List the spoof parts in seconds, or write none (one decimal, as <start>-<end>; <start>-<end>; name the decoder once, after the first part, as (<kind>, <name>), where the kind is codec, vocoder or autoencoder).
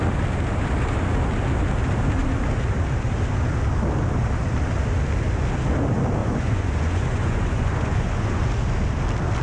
6.2-8.5 (vocoder, Vocos)